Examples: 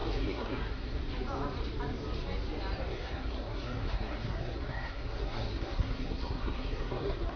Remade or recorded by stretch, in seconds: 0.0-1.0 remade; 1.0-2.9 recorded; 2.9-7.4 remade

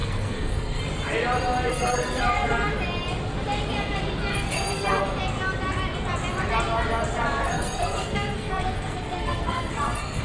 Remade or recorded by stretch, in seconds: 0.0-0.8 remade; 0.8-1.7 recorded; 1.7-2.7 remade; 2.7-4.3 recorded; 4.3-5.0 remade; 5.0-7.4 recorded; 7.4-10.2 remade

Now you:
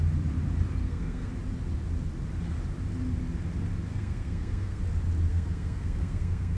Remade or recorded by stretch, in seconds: 0.0-0.8 recorded; 0.8-1.3 remade; 1.3-3.9 recorded; 3.9-4.8 remade; 4.8-5.3 recorded; 5.3-6.6 remade

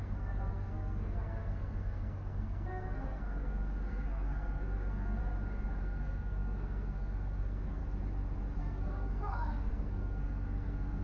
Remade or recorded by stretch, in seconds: 0.0-5.2 remade; 5.2-5.8 recorded; 5.8-7.8 remade; 7.8-8.6 recorded; 8.6-11.0 remade